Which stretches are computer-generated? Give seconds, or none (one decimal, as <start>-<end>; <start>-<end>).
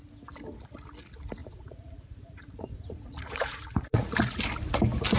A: 1.4-4.2